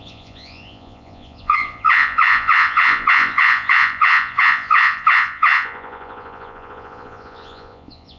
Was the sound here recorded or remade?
remade